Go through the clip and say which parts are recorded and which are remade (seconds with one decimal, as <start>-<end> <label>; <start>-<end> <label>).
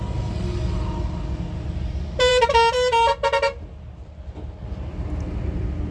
0.0-5.9 recorded